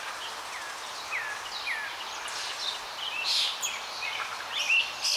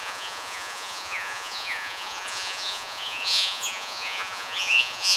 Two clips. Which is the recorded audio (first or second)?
first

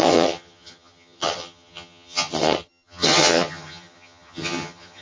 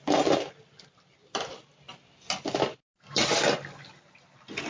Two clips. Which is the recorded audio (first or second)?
second